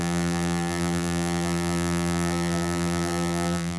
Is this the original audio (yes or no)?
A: no